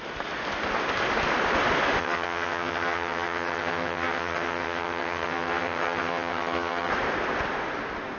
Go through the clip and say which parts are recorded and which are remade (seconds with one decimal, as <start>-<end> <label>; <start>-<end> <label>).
0.0-2.0 recorded; 2.0-6.9 remade; 6.9-8.2 recorded